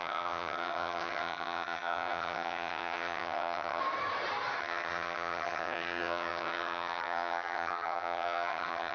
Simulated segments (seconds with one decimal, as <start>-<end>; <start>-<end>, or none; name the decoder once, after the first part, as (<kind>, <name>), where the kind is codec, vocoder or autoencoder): 0.0-3.8 (vocoder, HiFi-GAN); 4.6-8.9